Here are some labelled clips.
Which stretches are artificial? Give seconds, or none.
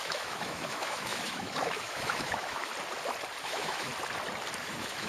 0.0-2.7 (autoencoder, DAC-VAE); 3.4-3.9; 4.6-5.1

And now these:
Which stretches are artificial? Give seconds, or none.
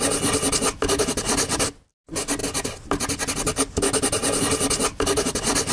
none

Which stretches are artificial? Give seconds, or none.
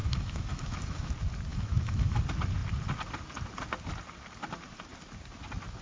0.0-1.1 (autoencoder, DAC-VAE); 1.5-2.2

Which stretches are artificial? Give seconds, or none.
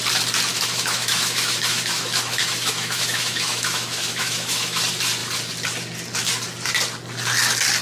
0.5-4.8 (autoencoder, DAC-VAE)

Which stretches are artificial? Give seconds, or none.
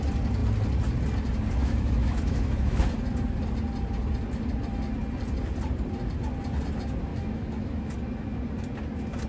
1.6-2.8 (autoencoder, DAC-VAE); 7.1-7.9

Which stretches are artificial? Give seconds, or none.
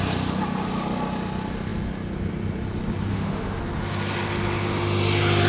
3.1-3.6 (autoencoder, DAC-VAE)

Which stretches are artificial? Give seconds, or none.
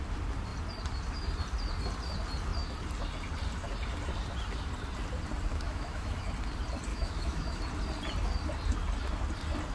5.5-6.2 (autoencoder, DAC-VAE); 6.9-7.6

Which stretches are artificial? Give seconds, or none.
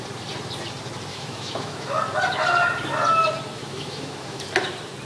1.1-2.0 (autoencoder, DAC-VAE); 3.6-4.4